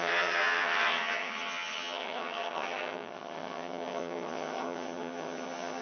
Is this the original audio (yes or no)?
no